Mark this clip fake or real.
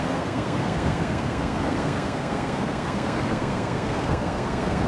fake